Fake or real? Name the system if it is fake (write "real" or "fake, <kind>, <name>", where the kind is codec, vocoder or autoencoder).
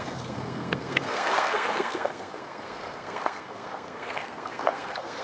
fake, codec, SNAC